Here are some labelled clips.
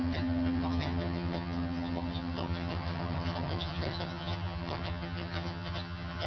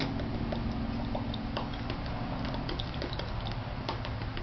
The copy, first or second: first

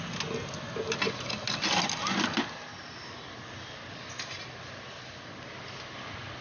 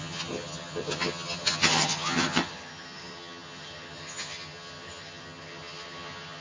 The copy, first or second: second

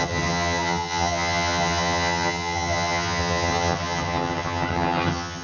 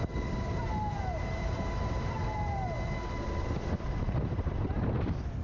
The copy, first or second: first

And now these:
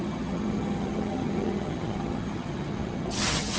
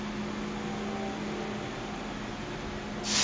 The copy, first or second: first